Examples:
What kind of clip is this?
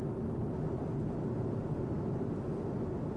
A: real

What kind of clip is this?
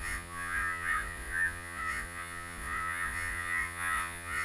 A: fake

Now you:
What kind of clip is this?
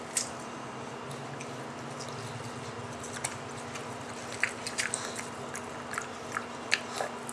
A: real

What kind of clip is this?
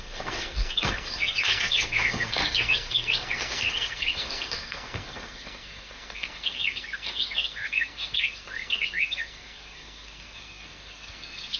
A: fake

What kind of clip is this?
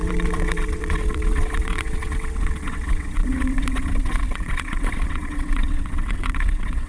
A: fake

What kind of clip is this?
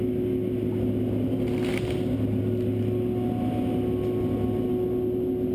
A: real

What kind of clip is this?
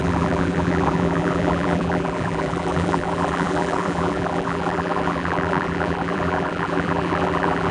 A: fake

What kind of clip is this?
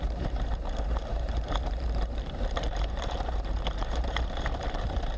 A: fake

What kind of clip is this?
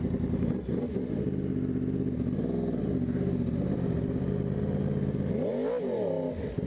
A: real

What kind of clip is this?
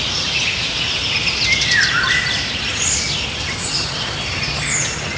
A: real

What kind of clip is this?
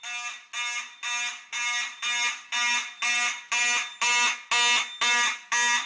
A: real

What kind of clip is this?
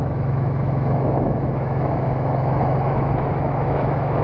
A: fake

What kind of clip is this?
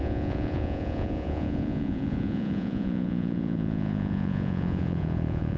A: fake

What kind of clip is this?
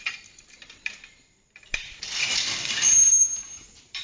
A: fake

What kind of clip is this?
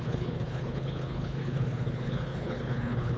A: fake